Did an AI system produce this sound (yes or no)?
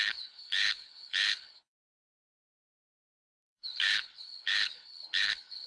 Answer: yes